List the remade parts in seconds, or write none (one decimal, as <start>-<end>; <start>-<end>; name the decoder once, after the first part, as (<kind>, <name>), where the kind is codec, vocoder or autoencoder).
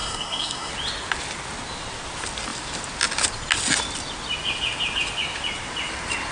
0.0-0.7 (codec, SNAC)